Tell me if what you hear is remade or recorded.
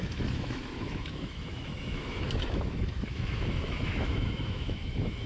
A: remade